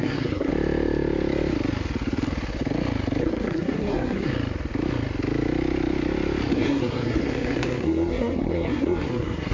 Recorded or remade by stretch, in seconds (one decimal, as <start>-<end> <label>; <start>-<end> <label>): 0.0-0.5 remade; 0.5-3.2 recorded; 3.2-4.3 remade; 4.3-6.5 recorded; 6.5-9.5 remade